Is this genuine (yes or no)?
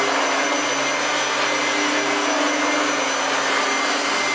yes